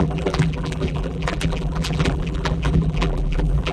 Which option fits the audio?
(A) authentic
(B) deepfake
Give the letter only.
B